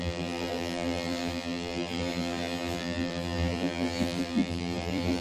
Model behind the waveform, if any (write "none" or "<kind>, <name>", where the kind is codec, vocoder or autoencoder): vocoder, BigVGAN v2